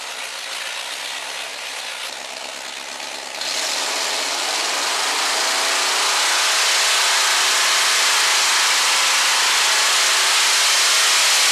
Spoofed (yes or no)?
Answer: no